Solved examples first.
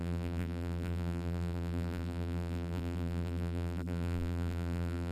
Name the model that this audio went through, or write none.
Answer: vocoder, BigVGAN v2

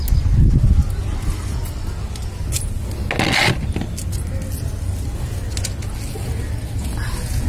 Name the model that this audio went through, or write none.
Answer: none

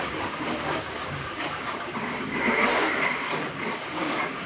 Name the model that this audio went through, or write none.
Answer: codec, DAC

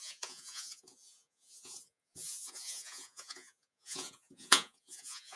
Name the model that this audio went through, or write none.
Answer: vocoder, Vocos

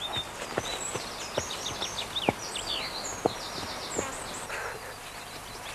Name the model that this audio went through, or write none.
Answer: none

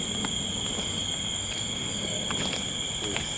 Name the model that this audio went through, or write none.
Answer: none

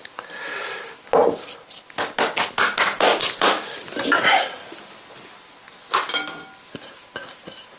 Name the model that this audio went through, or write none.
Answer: none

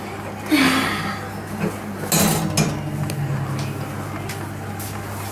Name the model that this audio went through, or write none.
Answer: none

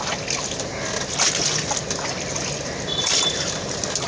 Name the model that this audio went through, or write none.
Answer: none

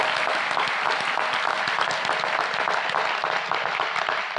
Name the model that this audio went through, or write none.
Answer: none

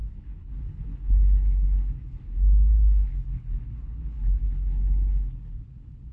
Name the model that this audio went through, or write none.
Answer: codec, HILCodec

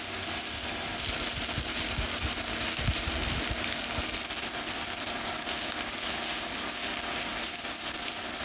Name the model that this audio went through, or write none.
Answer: none